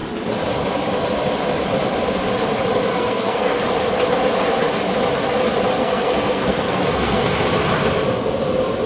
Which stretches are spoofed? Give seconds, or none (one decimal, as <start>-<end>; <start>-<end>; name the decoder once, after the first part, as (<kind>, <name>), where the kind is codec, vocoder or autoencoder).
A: 2.9-3.6 (codec, SNAC); 5.8-7.4